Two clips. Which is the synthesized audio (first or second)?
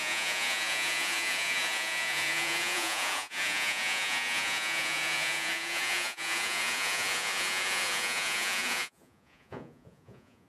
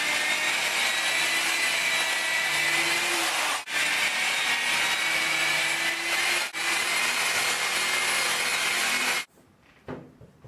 first